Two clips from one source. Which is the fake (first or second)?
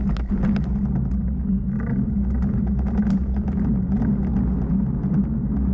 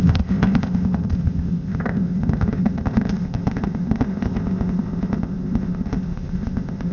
second